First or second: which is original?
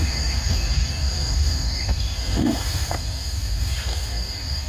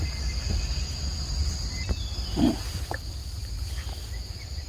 second